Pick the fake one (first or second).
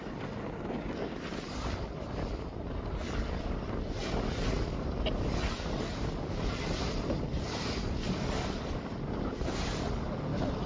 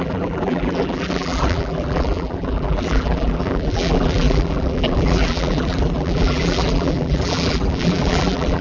second